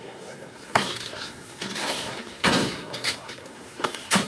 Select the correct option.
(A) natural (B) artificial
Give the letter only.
B